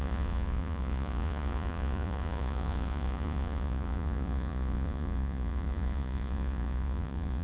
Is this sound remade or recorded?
remade